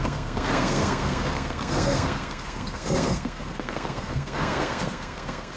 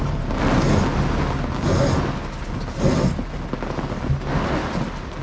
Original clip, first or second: second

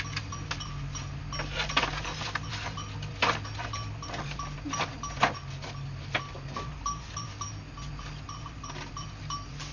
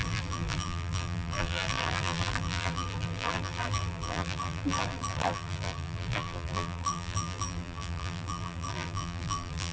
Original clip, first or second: first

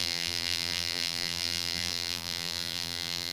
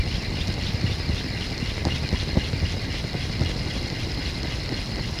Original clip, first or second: second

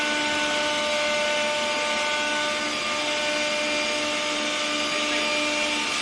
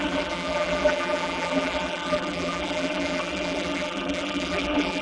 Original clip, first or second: first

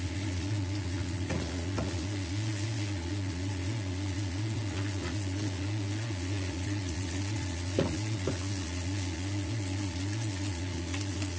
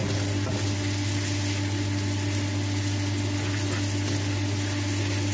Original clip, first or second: second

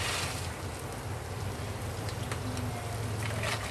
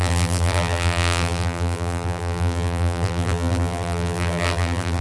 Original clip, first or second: first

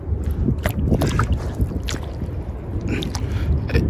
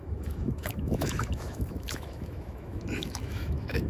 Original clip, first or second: first